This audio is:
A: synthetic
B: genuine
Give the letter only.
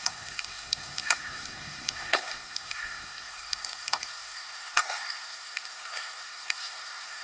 A